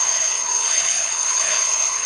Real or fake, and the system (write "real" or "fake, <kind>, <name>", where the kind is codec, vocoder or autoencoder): fake, codec, HILCodec